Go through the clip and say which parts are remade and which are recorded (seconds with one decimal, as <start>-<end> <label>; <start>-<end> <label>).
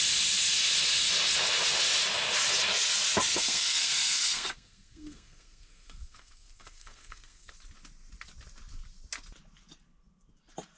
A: 0.0-3.3 recorded; 3.3-7.5 remade; 7.5-10.8 recorded